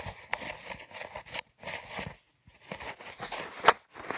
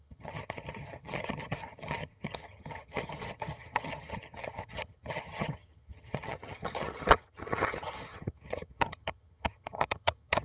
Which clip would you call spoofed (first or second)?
second